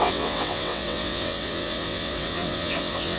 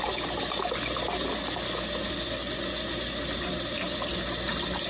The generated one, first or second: first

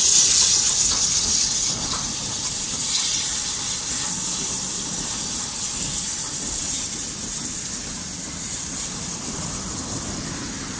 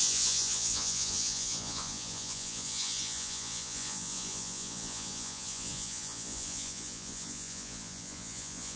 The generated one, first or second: second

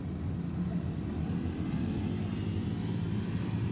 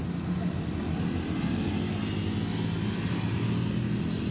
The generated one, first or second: first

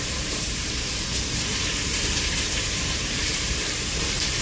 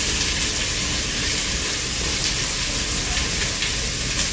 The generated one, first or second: first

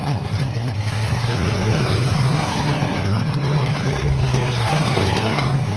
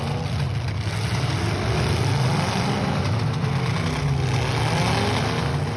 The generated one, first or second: first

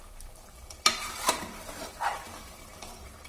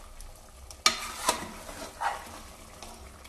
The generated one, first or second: first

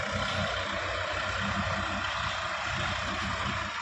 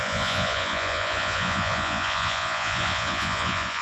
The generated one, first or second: second